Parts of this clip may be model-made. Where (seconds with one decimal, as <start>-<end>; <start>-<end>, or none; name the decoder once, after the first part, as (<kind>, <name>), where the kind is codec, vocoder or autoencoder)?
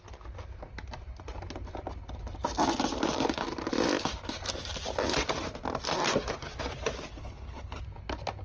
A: 7.2-7.8 (codec, HILCodec)